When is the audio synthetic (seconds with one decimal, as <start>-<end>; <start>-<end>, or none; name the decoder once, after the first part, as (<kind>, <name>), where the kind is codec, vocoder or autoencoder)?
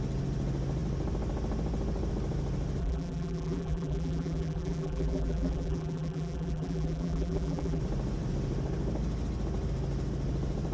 2.8-7.8 (vocoder, BigVGAN v2)